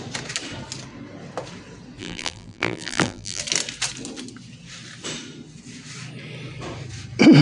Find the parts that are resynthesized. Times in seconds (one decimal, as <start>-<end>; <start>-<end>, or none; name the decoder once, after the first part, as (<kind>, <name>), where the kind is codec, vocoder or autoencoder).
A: 2.0-3.4 (vocoder, BigVGAN v2)